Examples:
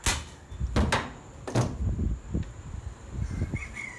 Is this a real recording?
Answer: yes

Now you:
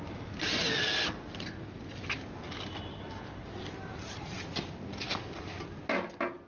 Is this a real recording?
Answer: yes